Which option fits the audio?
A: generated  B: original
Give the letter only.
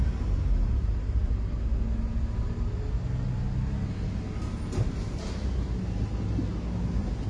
B